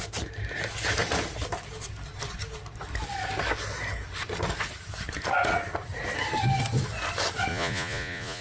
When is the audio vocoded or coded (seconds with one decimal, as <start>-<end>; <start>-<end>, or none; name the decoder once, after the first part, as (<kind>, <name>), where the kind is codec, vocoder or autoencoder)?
7.5-8.4 (vocoder, Vocos)